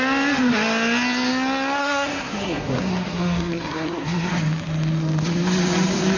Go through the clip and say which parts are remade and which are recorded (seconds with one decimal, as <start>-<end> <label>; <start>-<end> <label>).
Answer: 0.0-1.8 recorded; 1.8-4.3 remade; 4.3-6.2 recorded